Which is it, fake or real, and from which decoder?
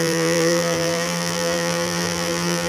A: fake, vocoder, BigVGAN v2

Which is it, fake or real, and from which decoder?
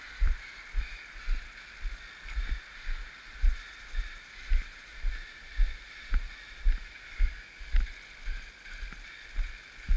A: real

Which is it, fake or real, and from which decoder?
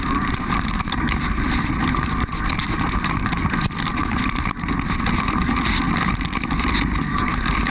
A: fake, vocoder, BigVGAN v2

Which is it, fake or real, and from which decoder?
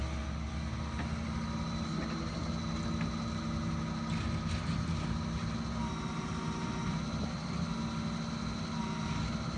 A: real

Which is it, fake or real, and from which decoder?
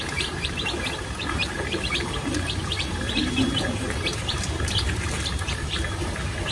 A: fake, vocoder, BigVGAN v2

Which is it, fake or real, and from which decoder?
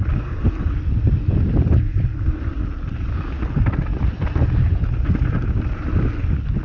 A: real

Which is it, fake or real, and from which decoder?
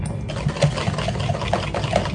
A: real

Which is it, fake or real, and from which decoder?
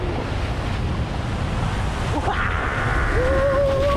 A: real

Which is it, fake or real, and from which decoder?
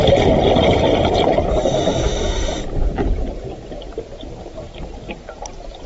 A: fake, vocoder, BigVGAN v2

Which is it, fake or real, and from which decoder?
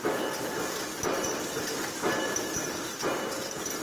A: real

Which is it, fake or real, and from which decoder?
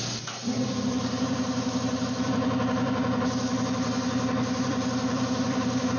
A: fake, vocoder, BigVGAN v2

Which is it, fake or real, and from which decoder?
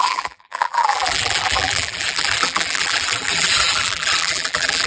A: fake, vocoder, BigVGAN v2